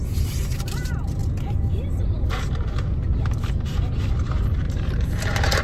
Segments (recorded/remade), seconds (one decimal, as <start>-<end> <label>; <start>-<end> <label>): 0.0-1.2 remade; 1.2-4.1 recorded; 4.1-5.6 remade